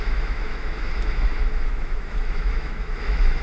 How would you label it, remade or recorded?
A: remade